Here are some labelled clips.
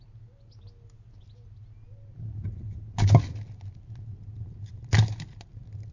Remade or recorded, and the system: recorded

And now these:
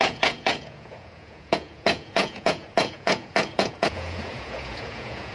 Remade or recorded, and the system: remade, vocoder, Vocos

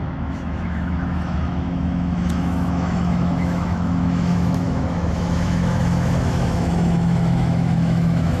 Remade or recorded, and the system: remade, autoencoder, DAC-VAE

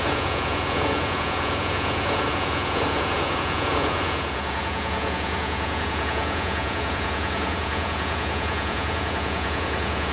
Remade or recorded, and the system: remade, vocoder, Vocos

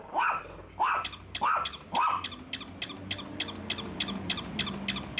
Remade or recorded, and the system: recorded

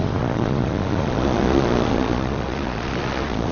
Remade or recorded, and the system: remade, vocoder, Vocos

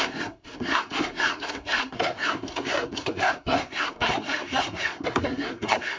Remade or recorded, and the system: remade, codec, SNAC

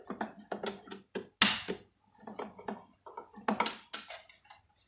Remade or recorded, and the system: recorded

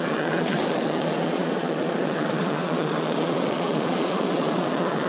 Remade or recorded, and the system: remade, vocoder, Vocos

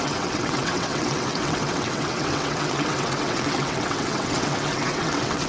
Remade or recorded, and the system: remade, vocoder, WaveNeXt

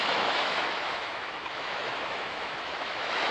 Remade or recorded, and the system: remade, autoencoder, DAC-VAE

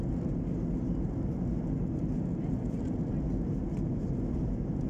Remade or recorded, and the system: recorded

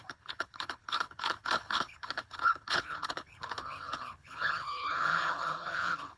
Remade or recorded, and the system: remade, codec, HILCodec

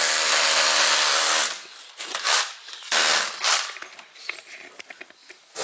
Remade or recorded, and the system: recorded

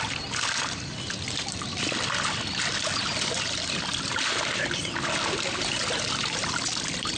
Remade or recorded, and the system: recorded